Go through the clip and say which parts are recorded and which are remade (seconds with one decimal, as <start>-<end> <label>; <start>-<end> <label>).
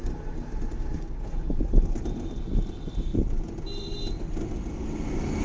0.0-1.5 remade; 1.5-5.4 recorded